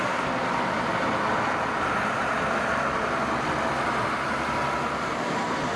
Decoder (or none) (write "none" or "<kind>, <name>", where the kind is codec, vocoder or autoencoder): none